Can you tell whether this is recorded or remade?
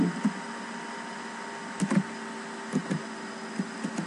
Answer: recorded